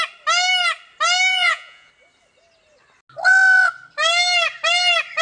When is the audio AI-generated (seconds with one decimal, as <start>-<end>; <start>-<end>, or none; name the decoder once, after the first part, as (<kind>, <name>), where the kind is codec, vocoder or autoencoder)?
1.3-1.9 (vocoder, Vocos)